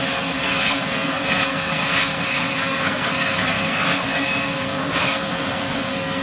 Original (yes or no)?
no